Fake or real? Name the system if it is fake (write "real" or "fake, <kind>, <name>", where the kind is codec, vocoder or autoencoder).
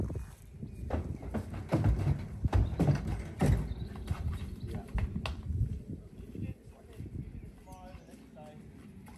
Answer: real